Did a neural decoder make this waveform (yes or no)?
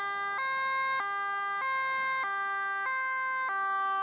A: no